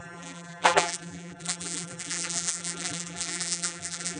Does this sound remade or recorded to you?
remade